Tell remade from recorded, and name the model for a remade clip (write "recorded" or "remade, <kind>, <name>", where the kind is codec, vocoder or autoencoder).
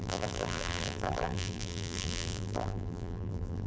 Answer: remade, vocoder, BigVGAN v2